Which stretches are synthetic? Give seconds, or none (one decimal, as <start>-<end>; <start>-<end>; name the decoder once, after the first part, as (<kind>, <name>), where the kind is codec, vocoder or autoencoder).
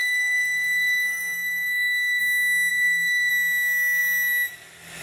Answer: 0.0-2.2 (codec, SNAC); 2.7-3.3